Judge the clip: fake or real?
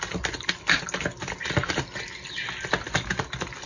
real